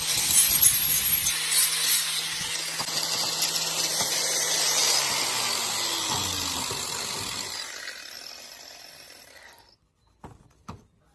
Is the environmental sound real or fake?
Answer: real